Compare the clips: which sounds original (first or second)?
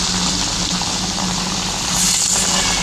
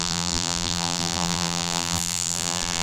first